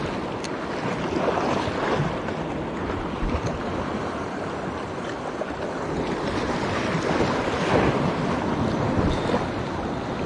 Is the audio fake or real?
real